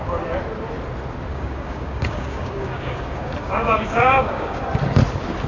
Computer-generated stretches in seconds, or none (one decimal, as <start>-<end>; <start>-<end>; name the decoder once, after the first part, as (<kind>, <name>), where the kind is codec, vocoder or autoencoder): 1.3-4.6 (codec, DAC)